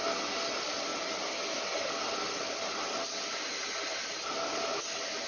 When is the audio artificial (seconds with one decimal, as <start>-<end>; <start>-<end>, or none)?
none